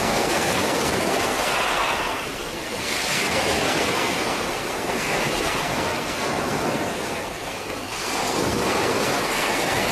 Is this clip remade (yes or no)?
yes